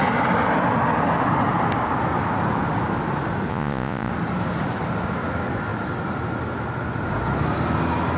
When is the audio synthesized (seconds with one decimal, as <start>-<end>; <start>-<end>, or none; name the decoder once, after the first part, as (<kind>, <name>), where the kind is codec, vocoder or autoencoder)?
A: 3.5-4.1 (vocoder, Vocos)